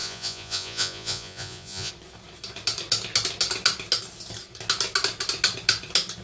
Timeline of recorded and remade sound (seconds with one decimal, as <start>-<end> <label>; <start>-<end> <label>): 0.0-1.9 remade; 1.9-6.2 recorded